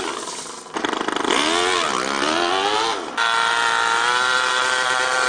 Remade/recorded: recorded